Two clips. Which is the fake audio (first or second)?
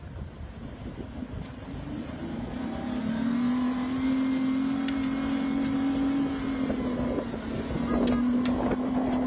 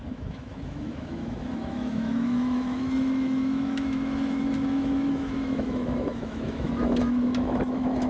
second